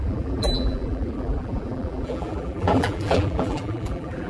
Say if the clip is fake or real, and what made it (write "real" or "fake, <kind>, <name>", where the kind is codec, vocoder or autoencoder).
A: fake, vocoder, BigVGAN v2